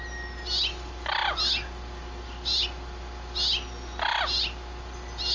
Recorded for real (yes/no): yes